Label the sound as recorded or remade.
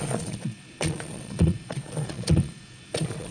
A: remade